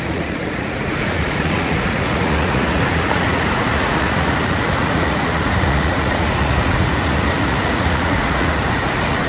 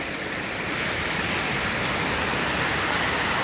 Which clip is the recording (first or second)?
second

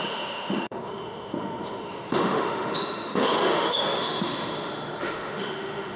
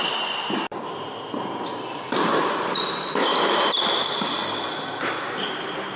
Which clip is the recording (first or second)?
second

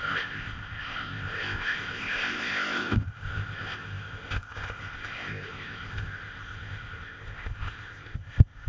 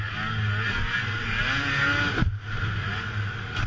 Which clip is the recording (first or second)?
second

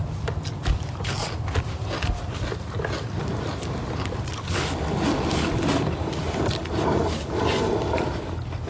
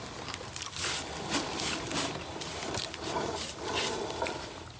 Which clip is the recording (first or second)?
first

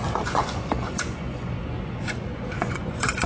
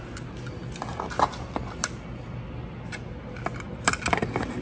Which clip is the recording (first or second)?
second